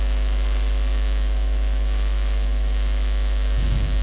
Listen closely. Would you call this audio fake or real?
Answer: fake